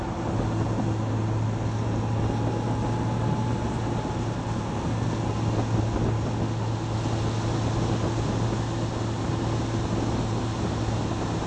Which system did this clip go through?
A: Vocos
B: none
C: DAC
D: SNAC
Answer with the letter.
B